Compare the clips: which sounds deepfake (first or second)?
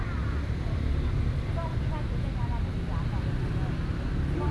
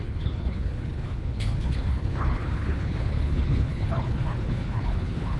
second